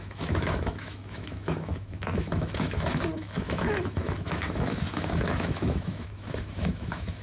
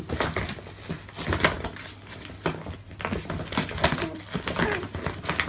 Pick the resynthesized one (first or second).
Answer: first